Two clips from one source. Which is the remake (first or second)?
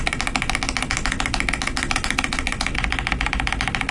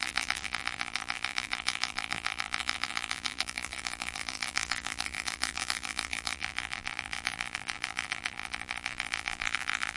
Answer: second